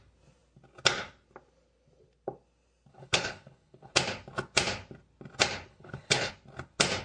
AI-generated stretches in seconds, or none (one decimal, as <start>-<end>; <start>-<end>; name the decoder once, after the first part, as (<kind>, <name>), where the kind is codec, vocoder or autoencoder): 2.9-3.9 (codec, HILCodec); 5.7-6.3